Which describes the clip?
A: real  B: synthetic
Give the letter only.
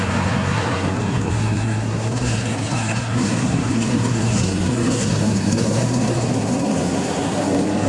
B